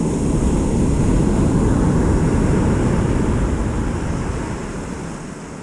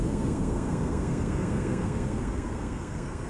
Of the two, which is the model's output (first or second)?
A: second